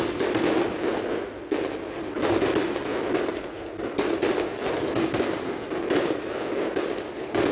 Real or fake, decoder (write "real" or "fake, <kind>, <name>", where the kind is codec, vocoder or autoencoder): real